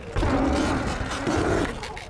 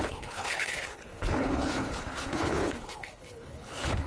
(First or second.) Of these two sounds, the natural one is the first